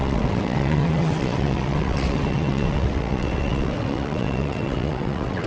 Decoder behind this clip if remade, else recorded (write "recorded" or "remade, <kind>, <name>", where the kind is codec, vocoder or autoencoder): remade, vocoder, WaveNeXt